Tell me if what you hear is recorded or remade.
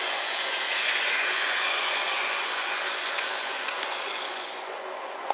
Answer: remade